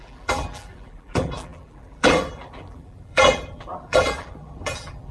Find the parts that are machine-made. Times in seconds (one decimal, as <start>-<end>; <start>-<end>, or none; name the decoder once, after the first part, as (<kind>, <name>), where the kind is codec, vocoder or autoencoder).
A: 0.0-5.1 (vocoder, BigVGAN v2)